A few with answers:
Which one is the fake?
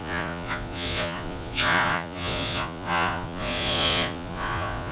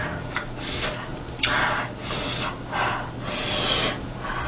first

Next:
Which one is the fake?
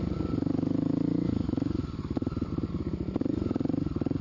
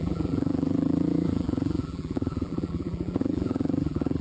second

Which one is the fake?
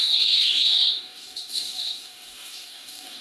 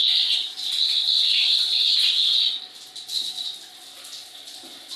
first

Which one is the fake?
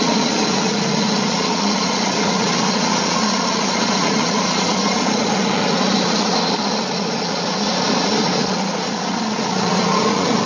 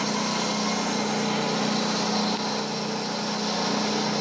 first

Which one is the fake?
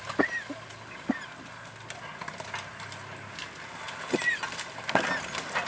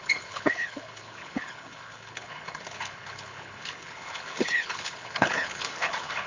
second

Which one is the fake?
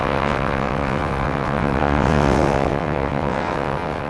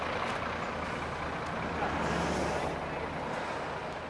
first